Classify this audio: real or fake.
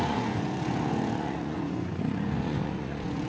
fake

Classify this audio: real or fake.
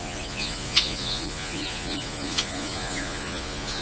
fake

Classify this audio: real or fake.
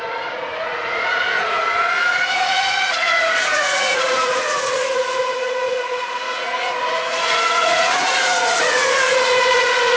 fake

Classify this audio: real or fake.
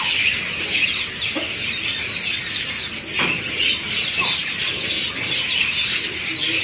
real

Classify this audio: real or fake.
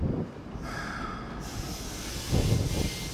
real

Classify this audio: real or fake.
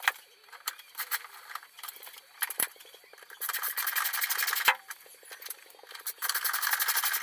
real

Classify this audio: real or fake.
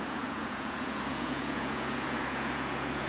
fake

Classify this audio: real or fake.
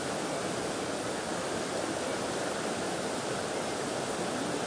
real